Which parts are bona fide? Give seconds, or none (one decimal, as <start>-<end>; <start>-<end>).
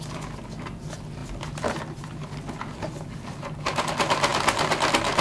0.0-5.2